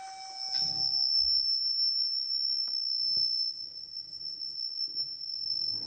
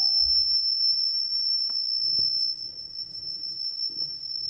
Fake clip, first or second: second